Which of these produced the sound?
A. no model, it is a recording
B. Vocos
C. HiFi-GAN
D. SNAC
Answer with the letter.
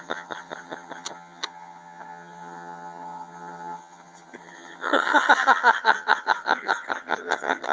C